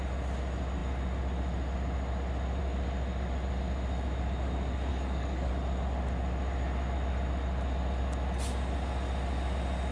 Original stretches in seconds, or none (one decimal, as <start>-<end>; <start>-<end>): 0.0-4.9; 5.5-9.9